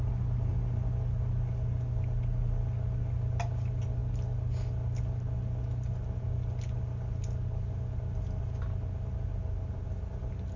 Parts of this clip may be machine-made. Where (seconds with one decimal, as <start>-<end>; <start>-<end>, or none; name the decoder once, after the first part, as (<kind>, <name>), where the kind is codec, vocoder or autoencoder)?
none